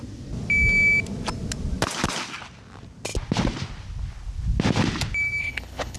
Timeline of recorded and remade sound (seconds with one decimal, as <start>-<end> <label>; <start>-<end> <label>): 0.0-5.4 recorded; 5.4-6.0 remade